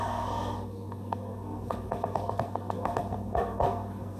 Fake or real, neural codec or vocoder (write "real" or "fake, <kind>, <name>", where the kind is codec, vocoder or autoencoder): fake, codec, SNAC